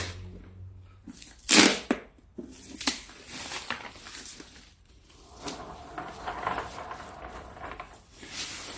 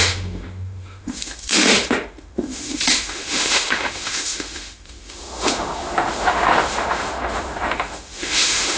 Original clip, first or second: first